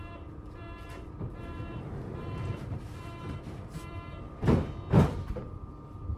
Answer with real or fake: fake